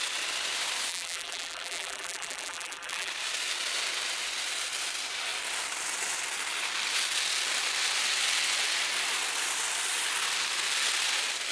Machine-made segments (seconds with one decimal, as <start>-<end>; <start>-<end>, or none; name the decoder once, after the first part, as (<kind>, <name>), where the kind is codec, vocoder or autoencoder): 0.9-3.1 (vocoder, BigVGAN v2)